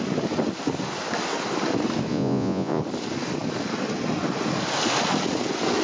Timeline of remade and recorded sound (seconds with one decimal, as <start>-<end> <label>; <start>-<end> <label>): 0.0-2.1 recorded; 2.1-2.8 remade; 2.8-5.8 recorded